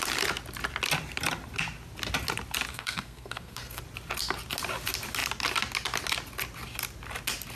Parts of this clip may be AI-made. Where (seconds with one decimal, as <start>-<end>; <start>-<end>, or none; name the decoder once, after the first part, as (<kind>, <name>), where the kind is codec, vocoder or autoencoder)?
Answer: 2.7-3.8 (codec, SNAC)